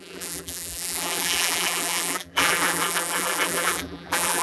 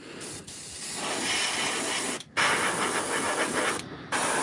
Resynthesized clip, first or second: first